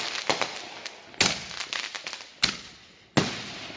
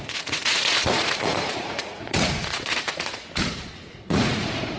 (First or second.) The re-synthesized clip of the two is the second